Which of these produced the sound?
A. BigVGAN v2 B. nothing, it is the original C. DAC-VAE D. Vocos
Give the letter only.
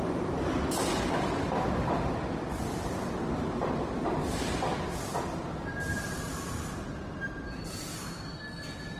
B